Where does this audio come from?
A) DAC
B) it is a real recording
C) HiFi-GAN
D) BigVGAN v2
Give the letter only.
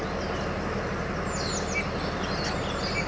B